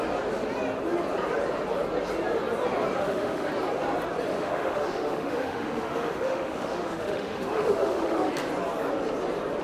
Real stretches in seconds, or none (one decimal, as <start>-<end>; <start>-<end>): 0.0-3.0; 3.5-4.3; 8.3-9.6